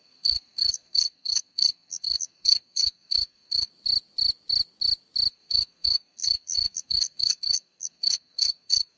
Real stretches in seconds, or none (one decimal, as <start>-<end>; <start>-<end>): 3.7-5.3